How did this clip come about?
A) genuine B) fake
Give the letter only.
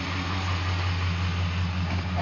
A